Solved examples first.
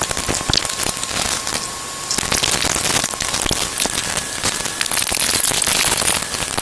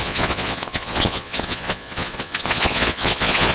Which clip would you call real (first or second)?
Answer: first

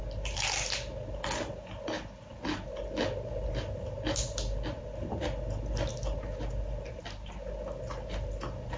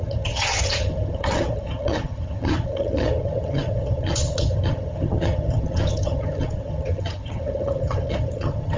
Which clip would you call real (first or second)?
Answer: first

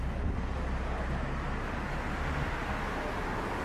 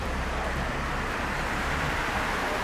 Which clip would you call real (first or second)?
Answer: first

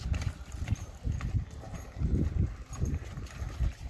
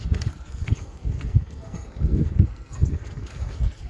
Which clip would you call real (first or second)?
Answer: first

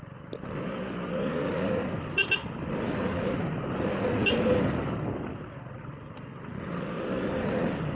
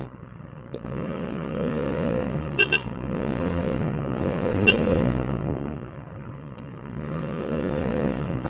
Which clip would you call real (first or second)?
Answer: first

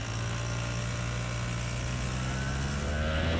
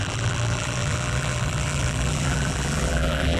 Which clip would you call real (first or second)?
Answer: first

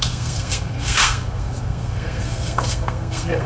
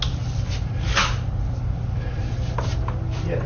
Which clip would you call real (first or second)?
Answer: second